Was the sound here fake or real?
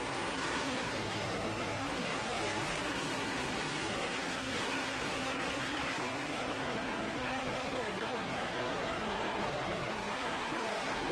fake